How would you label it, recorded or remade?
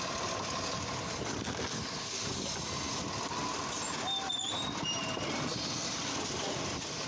recorded